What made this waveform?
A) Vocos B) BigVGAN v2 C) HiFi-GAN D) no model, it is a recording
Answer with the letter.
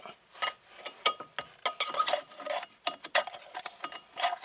D